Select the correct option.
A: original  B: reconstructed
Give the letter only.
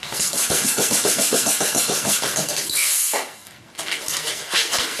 B